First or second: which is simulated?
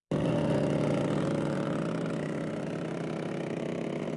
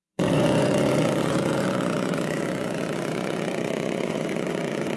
second